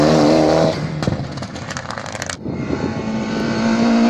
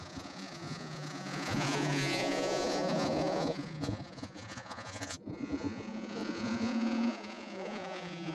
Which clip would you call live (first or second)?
first